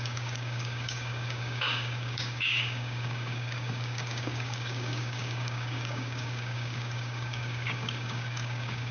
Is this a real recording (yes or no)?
no